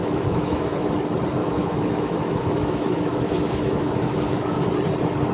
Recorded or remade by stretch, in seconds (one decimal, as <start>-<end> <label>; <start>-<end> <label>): 0.0-0.9 remade; 0.9-1.4 recorded; 1.4-4.6 remade; 4.6-5.3 recorded